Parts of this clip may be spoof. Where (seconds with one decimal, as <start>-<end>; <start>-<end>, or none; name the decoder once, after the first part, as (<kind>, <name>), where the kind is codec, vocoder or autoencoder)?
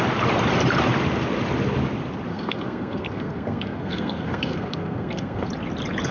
2.3-5.5 (codec, SNAC)